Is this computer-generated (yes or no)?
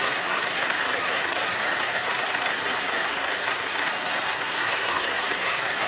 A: yes